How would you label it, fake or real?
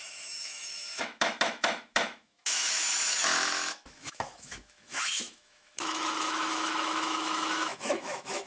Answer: fake